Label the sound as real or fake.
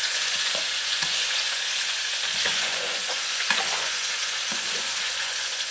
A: fake